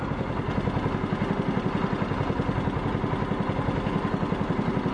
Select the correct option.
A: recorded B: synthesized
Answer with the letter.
A